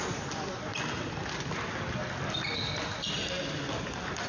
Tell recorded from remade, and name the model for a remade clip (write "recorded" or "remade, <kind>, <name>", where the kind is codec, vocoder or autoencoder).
recorded